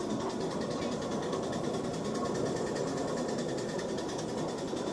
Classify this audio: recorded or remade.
recorded